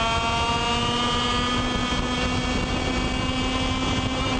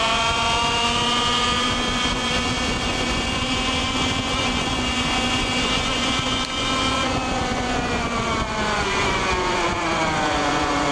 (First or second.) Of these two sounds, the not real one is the second